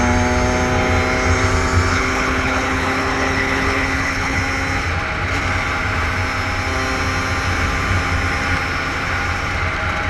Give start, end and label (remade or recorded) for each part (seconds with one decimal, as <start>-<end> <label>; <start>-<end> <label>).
0.0-1.9 recorded; 1.9-4.4 remade; 4.4-10.1 recorded